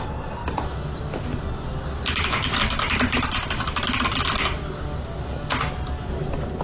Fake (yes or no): no